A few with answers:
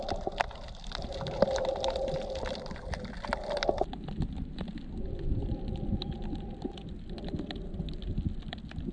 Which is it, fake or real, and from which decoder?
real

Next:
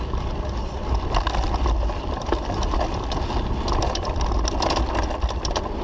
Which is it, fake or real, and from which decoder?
real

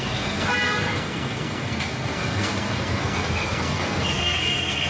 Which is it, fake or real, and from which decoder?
fake, codec, SNAC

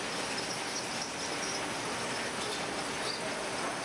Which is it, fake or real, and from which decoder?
real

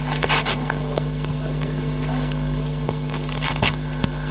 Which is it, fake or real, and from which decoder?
fake, codec, SNAC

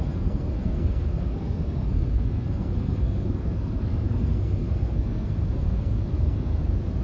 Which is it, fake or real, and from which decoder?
fake, codec, SNAC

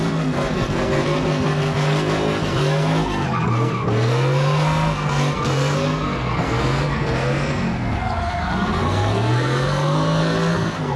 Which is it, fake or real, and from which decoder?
fake, codec, SNAC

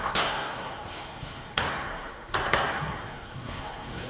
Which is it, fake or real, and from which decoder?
fake, codec, SNAC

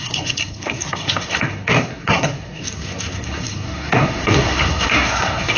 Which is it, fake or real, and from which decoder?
fake, codec, SNAC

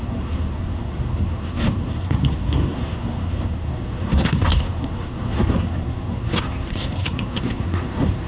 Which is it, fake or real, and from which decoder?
fake, codec, SNAC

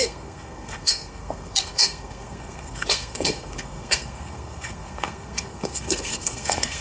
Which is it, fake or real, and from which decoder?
fake, codec, SNAC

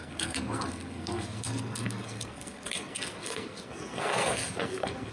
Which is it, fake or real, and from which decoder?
fake, codec, SNAC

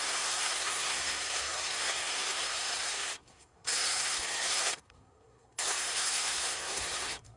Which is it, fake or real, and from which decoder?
fake, codec, SNAC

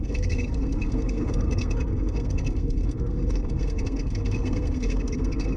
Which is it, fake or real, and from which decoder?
fake, codec, SNAC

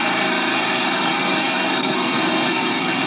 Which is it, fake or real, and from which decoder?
fake, codec, SNAC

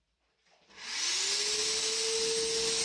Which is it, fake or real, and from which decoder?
real